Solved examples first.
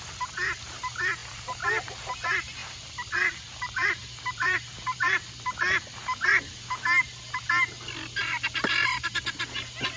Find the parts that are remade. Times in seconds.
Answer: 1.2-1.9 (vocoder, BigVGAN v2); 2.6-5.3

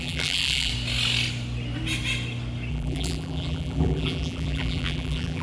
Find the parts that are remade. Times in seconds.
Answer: 0.0-0.7 (vocoder, BigVGAN v2); 2.7-5.4